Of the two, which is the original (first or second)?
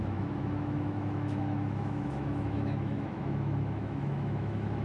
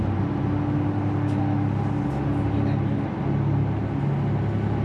second